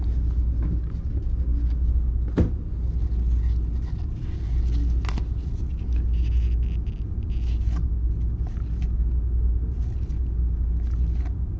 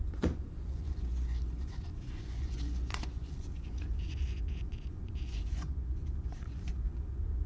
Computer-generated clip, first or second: second